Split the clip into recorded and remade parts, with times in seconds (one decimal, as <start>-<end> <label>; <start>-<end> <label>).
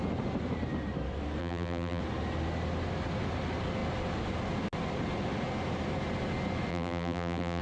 0.0-1.4 recorded; 1.4-2.0 remade; 2.0-6.7 recorded; 6.7-7.6 remade